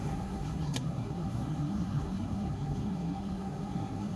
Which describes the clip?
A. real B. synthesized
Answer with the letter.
B